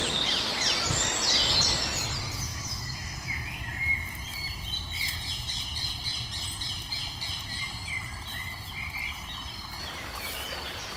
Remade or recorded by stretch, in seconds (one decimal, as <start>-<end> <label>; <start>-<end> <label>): 0.0-2.5 recorded; 2.5-3.6 remade; 3.6-11.0 recorded